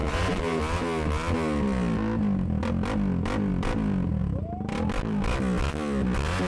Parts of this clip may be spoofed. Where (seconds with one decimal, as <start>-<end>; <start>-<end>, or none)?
0.0-0.6